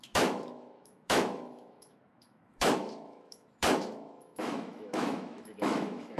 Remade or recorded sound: remade